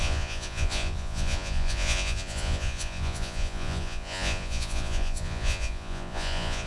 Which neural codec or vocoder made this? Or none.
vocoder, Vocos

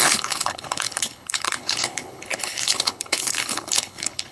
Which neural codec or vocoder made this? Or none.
codec, HILCodec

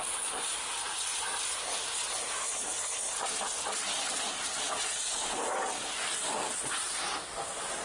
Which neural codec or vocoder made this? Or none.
none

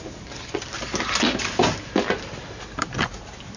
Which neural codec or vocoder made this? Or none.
none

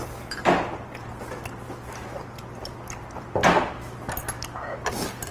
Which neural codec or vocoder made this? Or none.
none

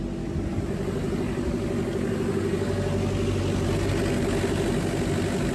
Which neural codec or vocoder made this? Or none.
none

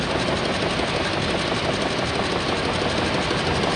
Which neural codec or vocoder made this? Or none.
none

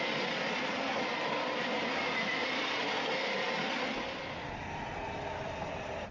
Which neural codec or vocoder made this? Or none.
none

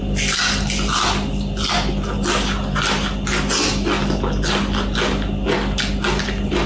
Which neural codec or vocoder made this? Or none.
none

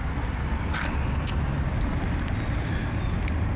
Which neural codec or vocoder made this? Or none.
none